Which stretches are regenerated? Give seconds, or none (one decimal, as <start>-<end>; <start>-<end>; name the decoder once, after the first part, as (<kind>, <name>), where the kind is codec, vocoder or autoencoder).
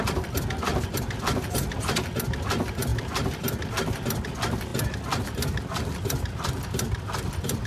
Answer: 2.9-3.7 (vocoder, BigVGAN v2)